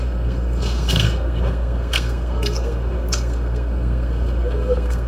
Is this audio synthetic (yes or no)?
yes